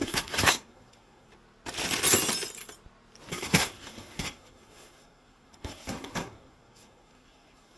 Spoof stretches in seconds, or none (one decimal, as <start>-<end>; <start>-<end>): 0.0-1.3; 3.3-7.8